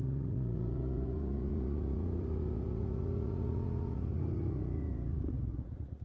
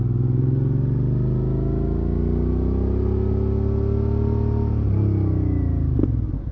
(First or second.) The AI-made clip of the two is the first